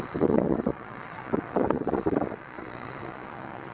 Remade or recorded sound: remade